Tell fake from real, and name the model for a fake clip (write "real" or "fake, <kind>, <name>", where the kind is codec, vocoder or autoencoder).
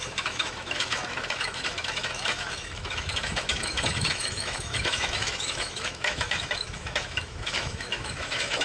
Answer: fake, autoencoder, DAC-VAE